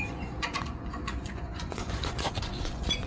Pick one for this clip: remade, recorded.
remade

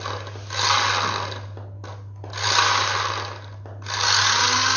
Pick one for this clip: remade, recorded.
recorded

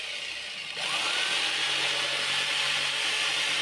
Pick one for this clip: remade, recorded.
recorded